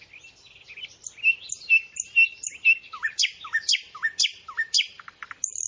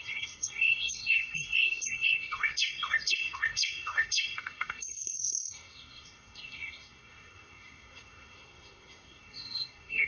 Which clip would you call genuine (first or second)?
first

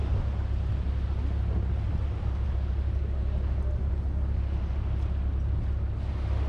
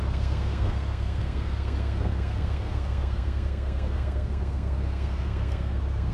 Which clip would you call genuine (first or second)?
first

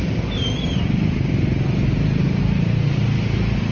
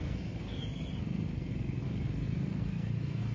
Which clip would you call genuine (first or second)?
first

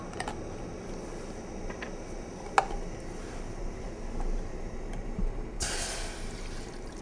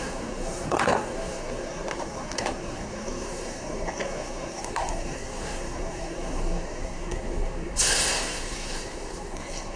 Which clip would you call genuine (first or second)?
first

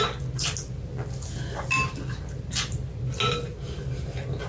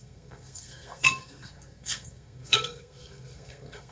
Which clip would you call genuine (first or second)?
first